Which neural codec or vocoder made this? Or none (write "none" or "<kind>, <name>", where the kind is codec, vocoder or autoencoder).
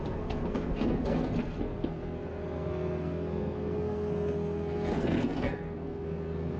codec, SNAC